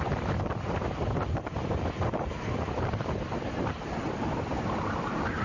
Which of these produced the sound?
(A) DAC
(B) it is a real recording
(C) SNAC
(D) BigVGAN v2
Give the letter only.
B